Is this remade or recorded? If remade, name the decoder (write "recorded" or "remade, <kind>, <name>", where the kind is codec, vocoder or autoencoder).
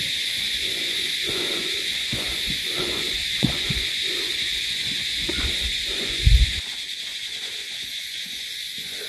remade, vocoder, Vocos